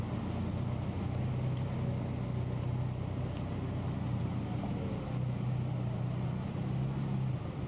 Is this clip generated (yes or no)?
no